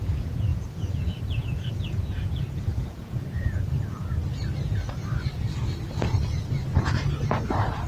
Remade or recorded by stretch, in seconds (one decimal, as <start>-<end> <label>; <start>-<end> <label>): 0.0-4.2 remade; 4.2-7.9 recorded